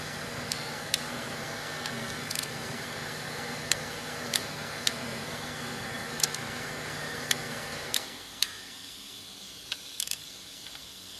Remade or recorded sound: remade